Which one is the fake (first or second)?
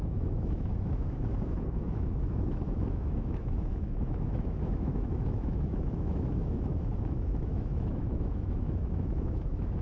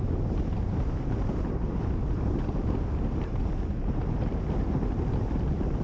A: first